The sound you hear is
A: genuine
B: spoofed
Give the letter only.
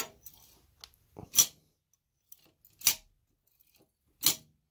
A